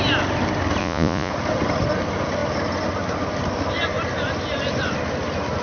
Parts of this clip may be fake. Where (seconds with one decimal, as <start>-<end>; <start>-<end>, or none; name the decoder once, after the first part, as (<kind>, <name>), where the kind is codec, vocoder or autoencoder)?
0.8-1.3 (vocoder, Vocos)